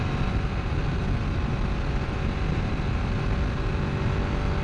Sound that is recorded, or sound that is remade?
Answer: recorded